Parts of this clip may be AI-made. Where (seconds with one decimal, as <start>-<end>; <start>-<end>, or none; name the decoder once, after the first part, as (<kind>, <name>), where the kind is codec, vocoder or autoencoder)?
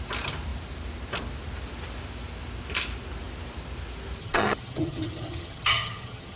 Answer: 4.2-6.4 (vocoder, HiFi-GAN)